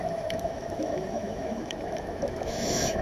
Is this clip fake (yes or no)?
yes